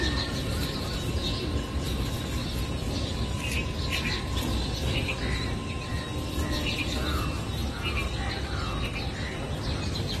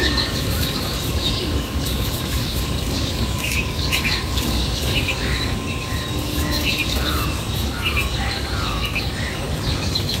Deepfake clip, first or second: second